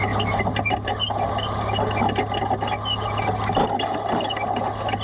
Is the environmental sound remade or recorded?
recorded